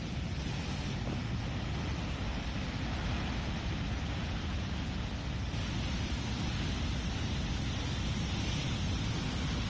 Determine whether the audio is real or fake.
real